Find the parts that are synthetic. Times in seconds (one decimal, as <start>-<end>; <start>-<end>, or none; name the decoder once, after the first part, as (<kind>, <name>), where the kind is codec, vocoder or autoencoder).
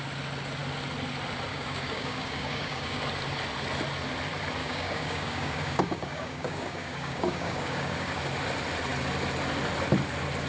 1.5-3.0 (codec, DAC); 4.6-8.2